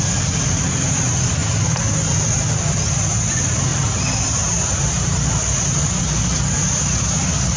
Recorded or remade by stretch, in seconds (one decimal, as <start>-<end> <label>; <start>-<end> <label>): 0.0-7.6 recorded